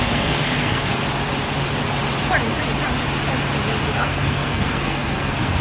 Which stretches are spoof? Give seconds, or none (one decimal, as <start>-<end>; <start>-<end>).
0.0-1.0; 3.9-5.6